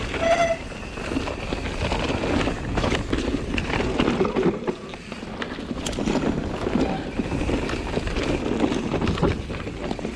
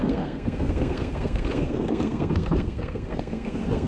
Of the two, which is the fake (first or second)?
second